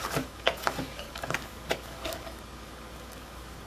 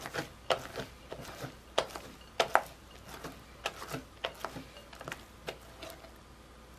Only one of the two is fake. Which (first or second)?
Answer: first